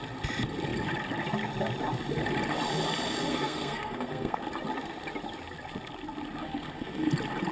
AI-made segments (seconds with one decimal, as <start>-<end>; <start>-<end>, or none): 3.3-4.4; 6.4-7.1